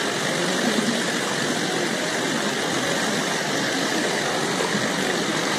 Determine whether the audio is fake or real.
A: real